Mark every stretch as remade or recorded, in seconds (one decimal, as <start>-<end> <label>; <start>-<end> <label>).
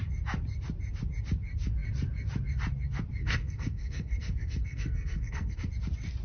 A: 0.0-3.2 recorded; 3.2-5.7 remade; 5.7-6.2 recorded